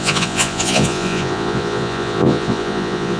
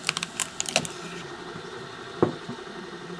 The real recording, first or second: second